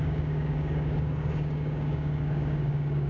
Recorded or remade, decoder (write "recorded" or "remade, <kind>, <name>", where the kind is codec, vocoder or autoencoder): remade, codec, DAC